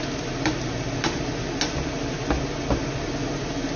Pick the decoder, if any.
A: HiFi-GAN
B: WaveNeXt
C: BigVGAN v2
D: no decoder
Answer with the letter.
D